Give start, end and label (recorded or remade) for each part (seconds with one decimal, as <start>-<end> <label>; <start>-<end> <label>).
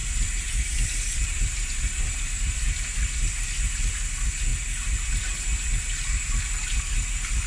0.0-2.8 remade; 2.8-7.5 recorded